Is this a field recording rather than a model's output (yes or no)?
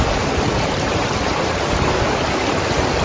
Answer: yes